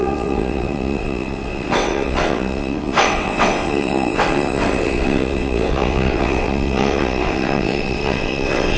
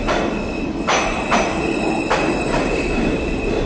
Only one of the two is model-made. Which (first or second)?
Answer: first